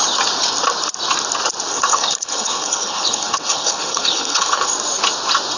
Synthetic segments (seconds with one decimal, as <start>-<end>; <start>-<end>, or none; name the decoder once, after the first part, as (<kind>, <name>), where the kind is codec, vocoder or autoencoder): 1.7-4.7 (codec, HILCodec)